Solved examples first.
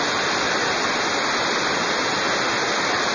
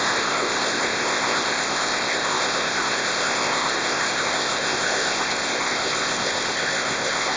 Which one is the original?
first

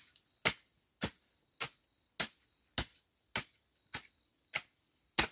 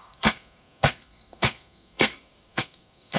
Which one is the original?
first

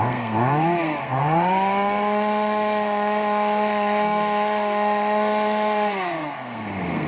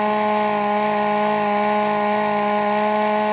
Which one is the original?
second